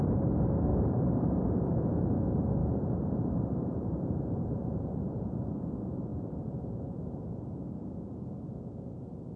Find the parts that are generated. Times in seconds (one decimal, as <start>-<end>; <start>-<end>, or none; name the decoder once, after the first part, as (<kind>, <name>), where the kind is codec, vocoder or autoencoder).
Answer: 0.7-1.7 (vocoder, BigVGAN v2); 2.6-5.6; 6.1-7.6

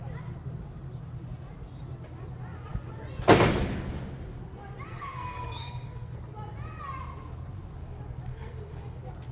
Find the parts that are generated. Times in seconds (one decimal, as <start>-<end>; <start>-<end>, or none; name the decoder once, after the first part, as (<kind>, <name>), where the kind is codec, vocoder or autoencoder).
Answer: 4.9-6.2 (codec, SNAC); 8.3-8.8

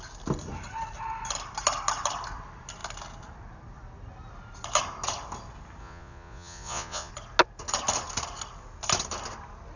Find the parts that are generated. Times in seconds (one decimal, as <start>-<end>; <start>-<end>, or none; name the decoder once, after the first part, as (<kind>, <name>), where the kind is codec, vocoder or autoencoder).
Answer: 5.8-7.1 (vocoder, Vocos)

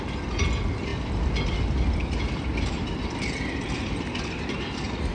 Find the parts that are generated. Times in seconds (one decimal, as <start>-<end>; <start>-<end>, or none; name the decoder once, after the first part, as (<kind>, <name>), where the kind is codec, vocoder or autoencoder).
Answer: none

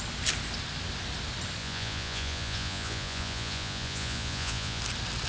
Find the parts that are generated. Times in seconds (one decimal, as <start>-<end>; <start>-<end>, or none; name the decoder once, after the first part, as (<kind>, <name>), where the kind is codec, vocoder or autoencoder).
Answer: 1.6-4.8 (vocoder, Vocos)

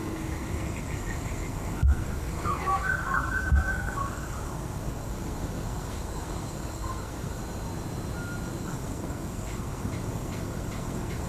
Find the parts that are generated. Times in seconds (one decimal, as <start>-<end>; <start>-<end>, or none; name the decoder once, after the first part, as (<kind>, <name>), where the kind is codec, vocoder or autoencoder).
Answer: 0.0-7.4 (codec, SNAC); 8.6-11.3

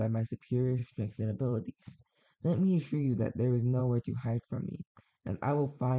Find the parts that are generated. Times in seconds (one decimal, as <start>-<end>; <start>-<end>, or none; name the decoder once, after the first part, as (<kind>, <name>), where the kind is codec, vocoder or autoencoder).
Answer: 0.0-3.8 (vocoder, BigVGAN v2); 5.1-6.0